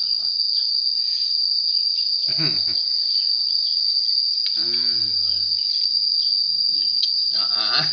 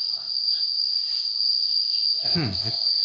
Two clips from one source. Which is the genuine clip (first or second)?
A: first